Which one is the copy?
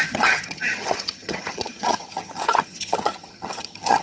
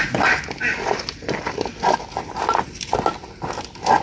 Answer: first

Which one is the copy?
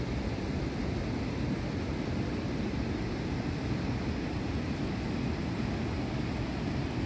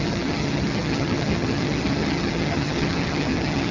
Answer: second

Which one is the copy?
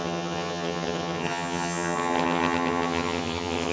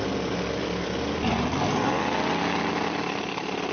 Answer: first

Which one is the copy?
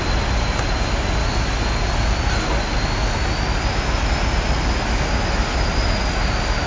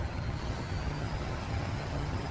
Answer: second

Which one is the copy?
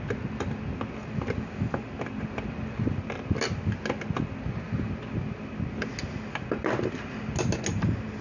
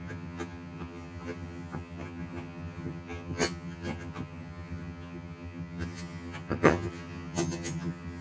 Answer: second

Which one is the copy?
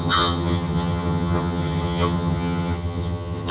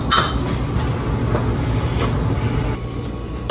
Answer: first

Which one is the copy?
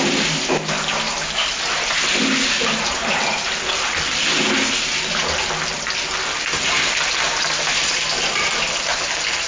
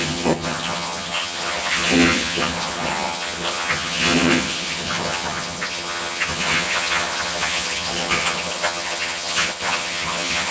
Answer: second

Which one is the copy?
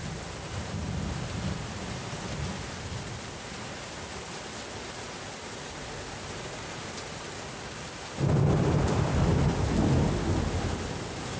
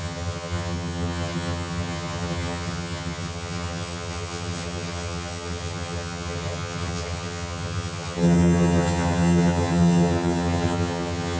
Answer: second